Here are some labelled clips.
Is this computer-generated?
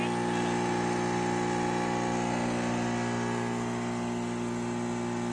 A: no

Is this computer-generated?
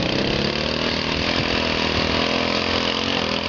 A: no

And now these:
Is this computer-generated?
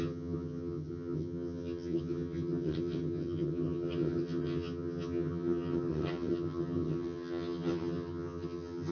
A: yes